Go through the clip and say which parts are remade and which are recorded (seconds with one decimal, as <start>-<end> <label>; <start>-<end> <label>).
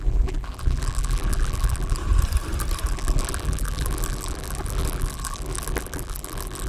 0.0-2.0 remade; 2.0-2.9 recorded; 2.9-6.7 remade